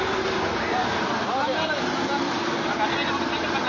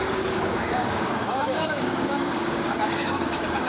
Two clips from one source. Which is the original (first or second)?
first